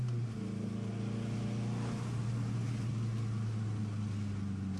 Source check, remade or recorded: recorded